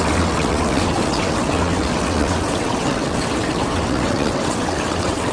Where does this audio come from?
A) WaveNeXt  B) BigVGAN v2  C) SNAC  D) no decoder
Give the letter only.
A